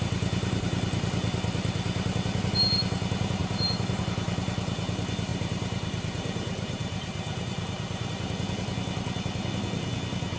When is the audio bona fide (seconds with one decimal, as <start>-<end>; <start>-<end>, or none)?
0.0-3.4; 4.0-5.3; 8.1-10.4